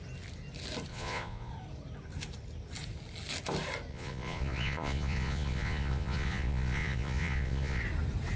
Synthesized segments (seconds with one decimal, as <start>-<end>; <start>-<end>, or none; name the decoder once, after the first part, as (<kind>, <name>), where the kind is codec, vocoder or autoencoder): 0.9-1.5 (vocoder, Vocos); 3.9-7.8